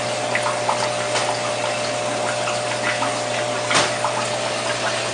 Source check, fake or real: real